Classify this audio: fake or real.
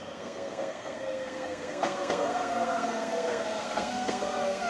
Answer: fake